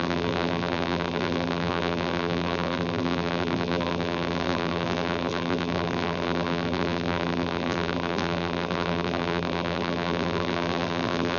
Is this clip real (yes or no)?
no